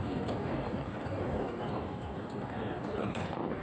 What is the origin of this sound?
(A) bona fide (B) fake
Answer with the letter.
B